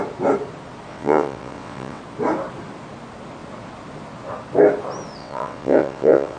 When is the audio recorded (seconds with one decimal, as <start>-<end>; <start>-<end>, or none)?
0.0-0.9; 2.0-5.2